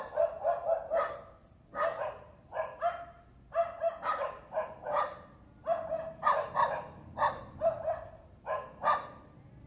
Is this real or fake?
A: real